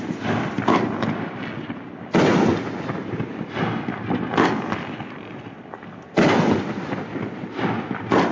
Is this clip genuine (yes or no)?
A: yes